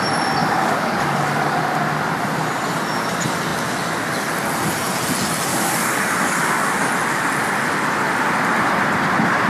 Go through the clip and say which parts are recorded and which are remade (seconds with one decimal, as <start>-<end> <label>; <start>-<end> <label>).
0.0-0.4 recorded; 0.4-1.6 remade; 1.6-5.5 recorded; 5.5-6.9 remade; 6.9-9.5 recorded